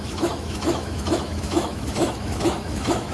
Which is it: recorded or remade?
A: remade